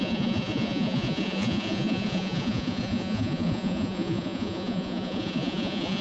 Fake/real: fake